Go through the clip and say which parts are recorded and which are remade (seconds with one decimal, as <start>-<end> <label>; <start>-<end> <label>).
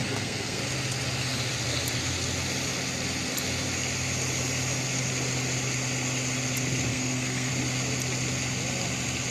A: 0.0-0.6 remade; 0.6-6.9 recorded; 6.9-7.5 remade; 7.5-9.3 recorded